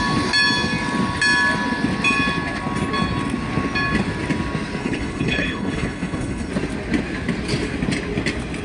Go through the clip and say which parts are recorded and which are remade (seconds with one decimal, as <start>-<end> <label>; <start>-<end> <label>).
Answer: 0.0-4.8 recorded; 4.8-6.5 remade; 6.5-8.6 recorded